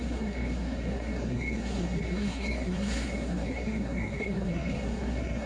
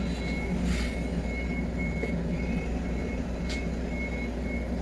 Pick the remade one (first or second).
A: first